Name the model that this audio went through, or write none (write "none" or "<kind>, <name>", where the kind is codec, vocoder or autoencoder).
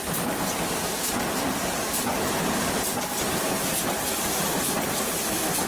none